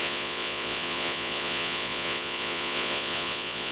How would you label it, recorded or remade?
remade